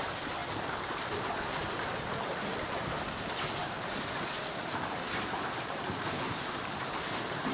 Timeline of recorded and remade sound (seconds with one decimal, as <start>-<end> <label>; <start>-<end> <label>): 0.0-0.4 recorded; 0.4-3.2 remade; 3.2-3.6 recorded; 3.6-7.5 remade